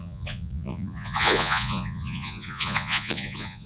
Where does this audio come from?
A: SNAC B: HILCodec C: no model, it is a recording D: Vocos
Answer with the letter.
D